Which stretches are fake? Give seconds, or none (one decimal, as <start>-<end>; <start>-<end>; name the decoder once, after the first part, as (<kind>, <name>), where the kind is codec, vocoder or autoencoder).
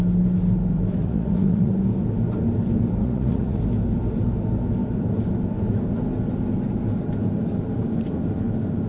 1.0-1.7 (vocoder, Vocos); 3.0-3.6